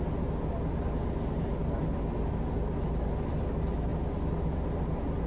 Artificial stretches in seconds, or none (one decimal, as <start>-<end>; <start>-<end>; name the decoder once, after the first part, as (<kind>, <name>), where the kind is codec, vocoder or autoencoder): none